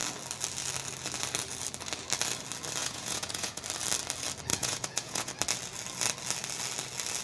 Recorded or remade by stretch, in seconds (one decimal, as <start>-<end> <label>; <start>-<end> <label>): 0.0-2.8 recorded; 2.8-3.6 remade; 3.6-4.5 recorded; 4.5-5.3 remade; 5.3-7.2 recorded